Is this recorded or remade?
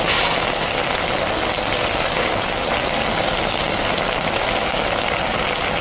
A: recorded